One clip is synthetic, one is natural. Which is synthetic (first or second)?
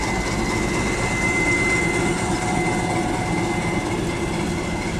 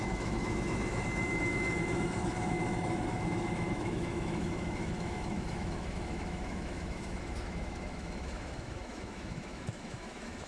second